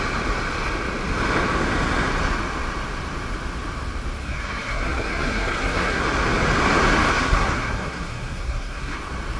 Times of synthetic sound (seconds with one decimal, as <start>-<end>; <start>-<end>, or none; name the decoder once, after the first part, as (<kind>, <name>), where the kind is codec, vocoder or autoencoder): 4.2-6.0 (codec, SNAC); 7.1-9.0